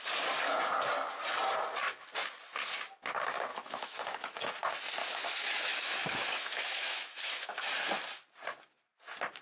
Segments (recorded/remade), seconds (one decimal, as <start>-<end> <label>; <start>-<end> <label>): 0.0-3.5 recorded; 3.5-4.4 remade; 4.4-5.0 recorded; 5.0-7.5 remade; 7.5-9.4 recorded